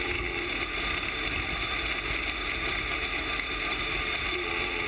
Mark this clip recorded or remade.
recorded